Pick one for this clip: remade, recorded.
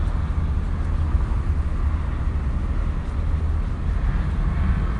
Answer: recorded